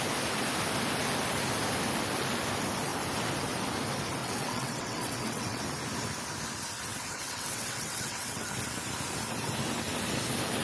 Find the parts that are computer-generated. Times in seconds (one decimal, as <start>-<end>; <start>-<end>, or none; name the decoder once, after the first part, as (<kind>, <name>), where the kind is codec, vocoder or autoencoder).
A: 4.2-5.6 (vocoder, WaveNeXt); 6.9-8.5